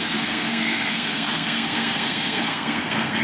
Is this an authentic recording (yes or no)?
no